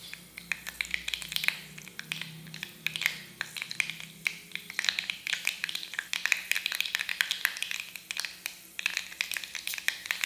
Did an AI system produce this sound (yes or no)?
no